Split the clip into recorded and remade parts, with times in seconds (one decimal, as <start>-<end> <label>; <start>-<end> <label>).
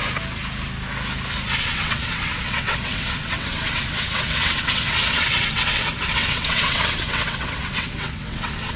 0.0-1.6 recorded; 1.6-8.8 remade